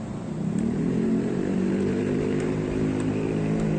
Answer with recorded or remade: remade